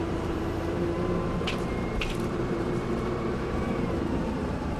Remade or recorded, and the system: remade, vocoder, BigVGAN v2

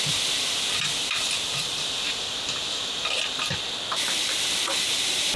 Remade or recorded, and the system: recorded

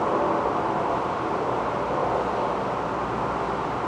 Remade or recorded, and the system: recorded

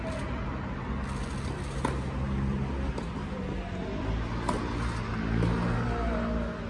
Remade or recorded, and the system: recorded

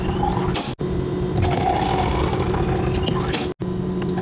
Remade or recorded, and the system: recorded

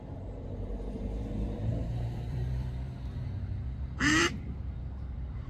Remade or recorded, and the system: remade, vocoder, BigVGAN v2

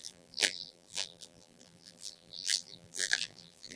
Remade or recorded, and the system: remade, vocoder, BigVGAN v2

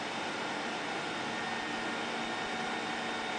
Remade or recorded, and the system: recorded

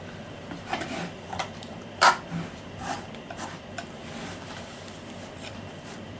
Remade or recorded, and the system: remade, vocoder, BigVGAN v2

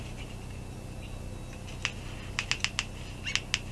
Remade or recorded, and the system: recorded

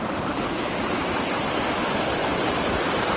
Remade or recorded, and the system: remade, vocoder, BigVGAN v2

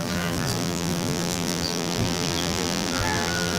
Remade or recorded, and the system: remade, vocoder, BigVGAN v2